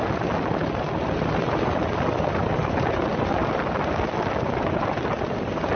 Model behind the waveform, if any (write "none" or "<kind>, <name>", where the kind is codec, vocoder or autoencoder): none